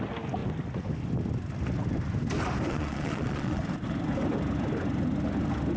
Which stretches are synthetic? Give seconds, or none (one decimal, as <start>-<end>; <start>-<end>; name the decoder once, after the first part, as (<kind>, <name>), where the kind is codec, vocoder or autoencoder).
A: 2.7-3.6 (vocoder, Vocos)